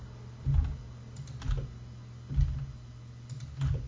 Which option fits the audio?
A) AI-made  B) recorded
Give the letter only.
B